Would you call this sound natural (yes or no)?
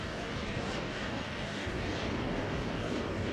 no